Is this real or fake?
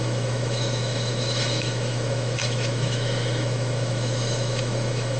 fake